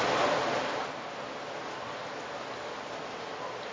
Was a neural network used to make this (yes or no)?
no